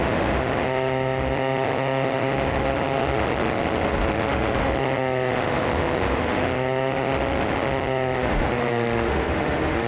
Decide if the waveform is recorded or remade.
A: remade